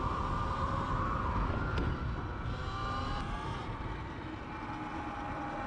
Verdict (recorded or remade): recorded